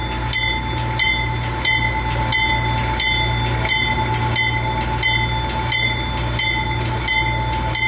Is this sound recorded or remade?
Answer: recorded